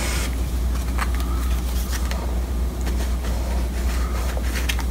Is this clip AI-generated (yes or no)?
no